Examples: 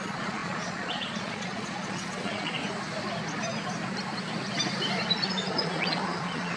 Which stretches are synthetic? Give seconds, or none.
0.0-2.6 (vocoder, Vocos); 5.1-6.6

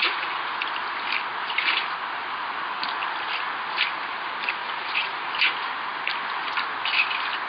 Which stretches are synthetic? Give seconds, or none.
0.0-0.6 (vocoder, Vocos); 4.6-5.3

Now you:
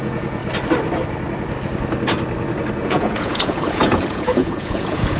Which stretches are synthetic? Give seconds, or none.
0.0-0.4 (vocoder, Vocos); 2.8-5.2

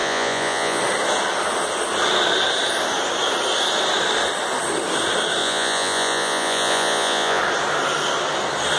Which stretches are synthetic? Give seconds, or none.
0.0-0.8 (vocoder, Vocos); 5.4-7.4

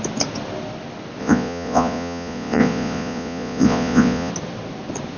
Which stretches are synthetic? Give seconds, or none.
1.2-4.3 (vocoder, Vocos)

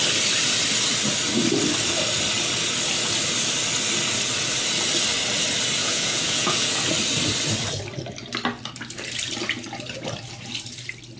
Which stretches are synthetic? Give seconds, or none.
5.8-6.8 (vocoder, Vocos)